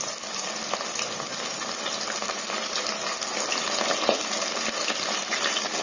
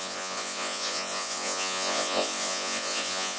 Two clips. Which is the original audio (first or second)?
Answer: first